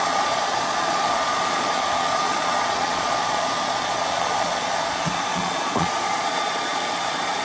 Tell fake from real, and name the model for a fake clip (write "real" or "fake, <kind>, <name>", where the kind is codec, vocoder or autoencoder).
fake, vocoder, Vocos